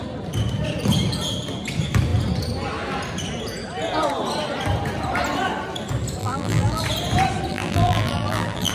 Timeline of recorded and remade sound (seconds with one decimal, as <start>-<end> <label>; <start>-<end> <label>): 0.0-6.2 recorded; 6.2-6.8 remade; 6.8-7.5 recorded; 7.5-8.7 remade